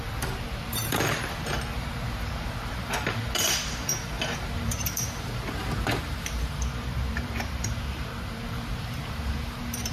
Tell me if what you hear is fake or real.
fake